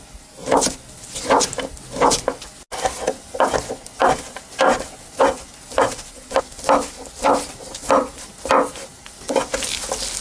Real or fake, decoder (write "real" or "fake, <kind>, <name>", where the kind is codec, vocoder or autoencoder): real